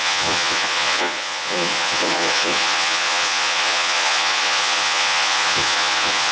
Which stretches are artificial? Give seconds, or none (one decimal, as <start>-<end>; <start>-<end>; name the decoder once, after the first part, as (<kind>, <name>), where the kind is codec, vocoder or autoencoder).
0.0-6.3 (vocoder, Vocos)